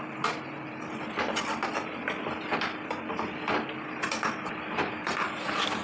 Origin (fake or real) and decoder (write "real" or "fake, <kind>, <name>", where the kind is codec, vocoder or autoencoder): real